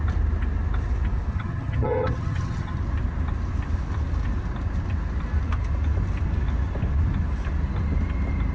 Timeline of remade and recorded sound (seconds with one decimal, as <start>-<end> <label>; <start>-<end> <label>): 0.0-1.3 recorded; 1.3-2.8 remade; 2.8-8.5 recorded